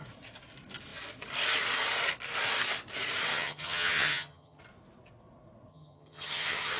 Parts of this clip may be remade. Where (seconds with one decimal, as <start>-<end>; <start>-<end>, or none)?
3.3-4.6; 5.7-6.8